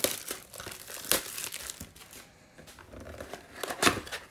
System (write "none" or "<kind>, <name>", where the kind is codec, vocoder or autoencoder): none